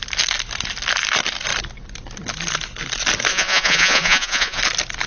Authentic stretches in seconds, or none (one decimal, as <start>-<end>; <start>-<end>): 0.0-3.3; 4.6-5.1

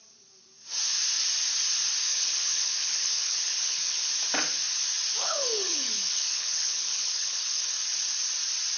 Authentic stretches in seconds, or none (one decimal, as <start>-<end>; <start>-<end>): 0.0-2.1; 4.1-5.2; 7.7-8.8

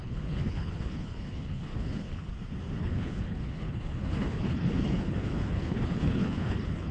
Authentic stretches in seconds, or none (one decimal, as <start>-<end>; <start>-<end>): 2.3-2.8